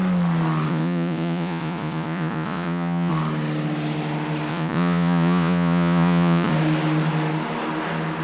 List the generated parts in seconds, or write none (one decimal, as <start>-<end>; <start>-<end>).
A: 0.7-3.1; 4.5-6.5